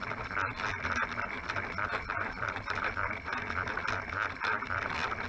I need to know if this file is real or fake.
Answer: fake